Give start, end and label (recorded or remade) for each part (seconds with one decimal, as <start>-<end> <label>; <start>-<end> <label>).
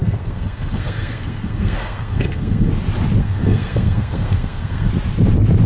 0.0-2.7 remade; 2.7-3.2 recorded; 3.2-4.9 remade; 4.9-5.7 recorded